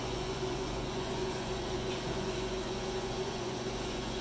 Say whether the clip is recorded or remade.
remade